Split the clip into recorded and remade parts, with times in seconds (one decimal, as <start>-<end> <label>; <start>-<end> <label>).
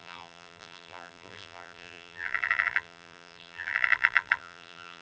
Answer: 0.0-5.0 remade